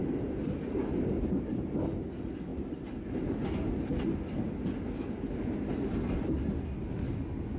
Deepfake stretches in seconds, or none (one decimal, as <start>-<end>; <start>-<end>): none